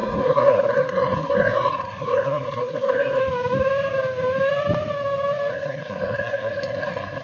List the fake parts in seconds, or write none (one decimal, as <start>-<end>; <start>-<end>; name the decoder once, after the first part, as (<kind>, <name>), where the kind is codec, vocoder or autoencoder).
0.0-3.2 (codec, SNAC); 5.5-7.2